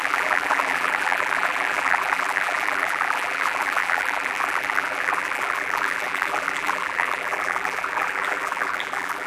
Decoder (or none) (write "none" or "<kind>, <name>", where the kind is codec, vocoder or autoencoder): vocoder, BigVGAN v2